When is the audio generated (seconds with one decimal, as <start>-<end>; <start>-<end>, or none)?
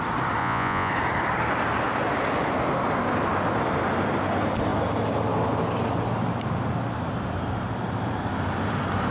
0.4-0.9